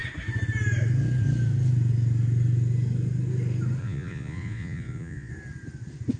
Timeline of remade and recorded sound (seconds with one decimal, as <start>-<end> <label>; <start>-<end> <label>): 0.0-3.8 recorded; 3.8-5.3 remade; 5.3-6.2 recorded